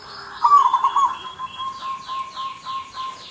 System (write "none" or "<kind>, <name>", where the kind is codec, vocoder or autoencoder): none